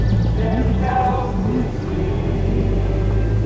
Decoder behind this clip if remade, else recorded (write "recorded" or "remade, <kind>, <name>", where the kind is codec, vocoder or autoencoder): recorded